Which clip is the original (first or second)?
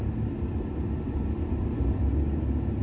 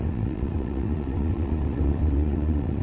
first